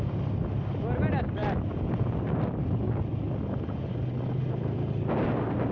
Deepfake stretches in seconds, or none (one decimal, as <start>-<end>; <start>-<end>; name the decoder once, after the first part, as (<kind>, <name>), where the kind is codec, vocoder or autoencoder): none